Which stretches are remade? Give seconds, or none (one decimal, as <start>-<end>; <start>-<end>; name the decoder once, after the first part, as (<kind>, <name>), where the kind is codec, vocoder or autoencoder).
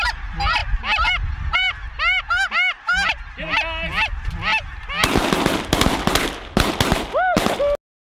none